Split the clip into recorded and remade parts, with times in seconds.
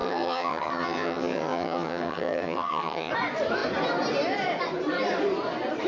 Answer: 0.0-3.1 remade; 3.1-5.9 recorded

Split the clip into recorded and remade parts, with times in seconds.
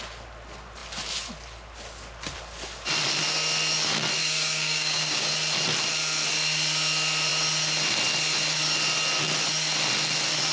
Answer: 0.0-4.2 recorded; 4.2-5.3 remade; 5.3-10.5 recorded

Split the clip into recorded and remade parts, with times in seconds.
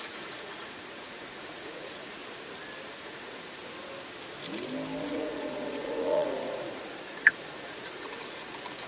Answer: 0.0-2.2 remade; 2.2-2.9 recorded; 2.9-3.6 remade; 3.6-5.0 recorded; 5.0-8.9 remade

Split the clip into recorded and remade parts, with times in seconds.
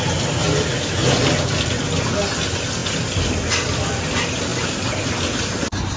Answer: 0.0-6.0 recorded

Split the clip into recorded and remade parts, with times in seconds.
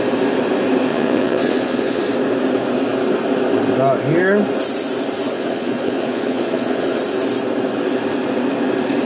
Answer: 0.0-0.9 recorded; 0.9-2.0 remade; 2.0-5.3 recorded; 5.3-7.0 remade; 7.0-9.1 recorded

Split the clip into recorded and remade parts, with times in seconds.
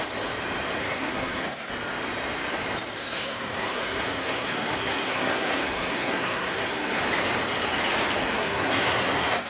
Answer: 0.0-0.8 recorded; 0.8-1.7 remade; 1.7-3.0 recorded; 3.0-7.0 remade; 7.0-8.2 recorded; 8.2-9.5 remade